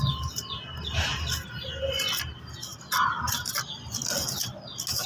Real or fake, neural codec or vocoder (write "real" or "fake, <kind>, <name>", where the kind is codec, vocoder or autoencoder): real